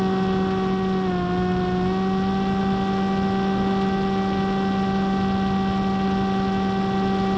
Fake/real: real